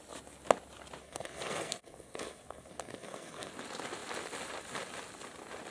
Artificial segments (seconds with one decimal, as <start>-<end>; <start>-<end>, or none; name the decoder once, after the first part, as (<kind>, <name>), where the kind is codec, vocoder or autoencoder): 1.0-3.5 (codec, SNAC)